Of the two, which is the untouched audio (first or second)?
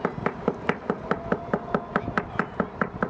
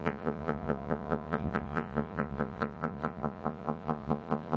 first